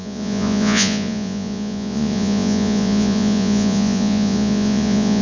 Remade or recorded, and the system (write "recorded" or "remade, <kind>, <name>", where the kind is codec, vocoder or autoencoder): remade, vocoder, Vocos